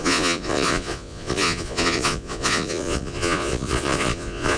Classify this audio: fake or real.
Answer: fake